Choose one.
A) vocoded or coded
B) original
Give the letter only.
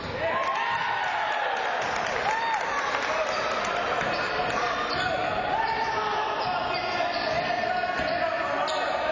B